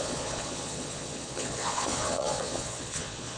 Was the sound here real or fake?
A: fake